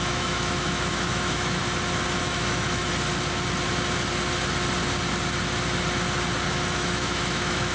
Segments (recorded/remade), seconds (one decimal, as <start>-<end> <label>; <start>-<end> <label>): 0.0-1.6 remade; 1.6-2.2 recorded; 2.2-2.9 remade; 2.9-6.5 recorded; 6.5-7.7 remade